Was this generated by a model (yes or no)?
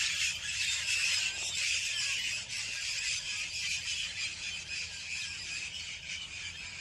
yes